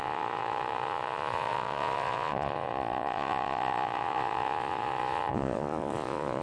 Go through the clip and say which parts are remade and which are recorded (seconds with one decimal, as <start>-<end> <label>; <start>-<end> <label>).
0.0-6.4 remade